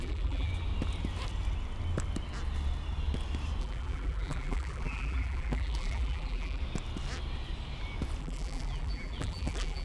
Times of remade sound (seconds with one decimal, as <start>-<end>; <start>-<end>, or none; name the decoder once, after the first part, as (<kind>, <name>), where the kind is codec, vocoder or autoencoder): 0.0-0.5 (vocoder, BigVGAN v2); 3.6-6.6; 8.2-9.8